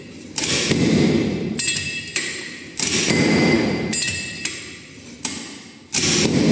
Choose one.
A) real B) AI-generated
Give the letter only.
A